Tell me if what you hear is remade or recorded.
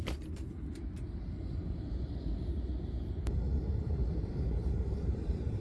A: remade